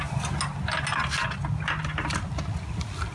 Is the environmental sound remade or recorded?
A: recorded